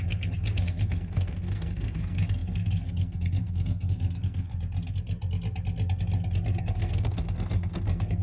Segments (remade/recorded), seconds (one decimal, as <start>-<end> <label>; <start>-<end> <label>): 0.0-4.5 remade; 4.5-6.6 recorded; 6.6-8.2 remade